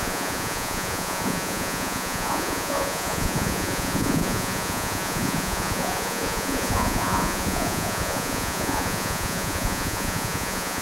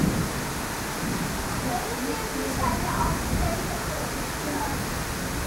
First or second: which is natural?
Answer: second